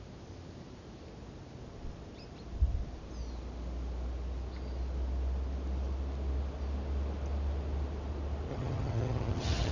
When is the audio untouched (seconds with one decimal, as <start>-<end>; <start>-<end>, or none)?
0.0-8.5